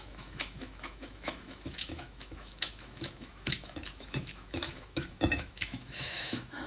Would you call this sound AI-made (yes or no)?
yes